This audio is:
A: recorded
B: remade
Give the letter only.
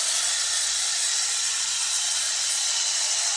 B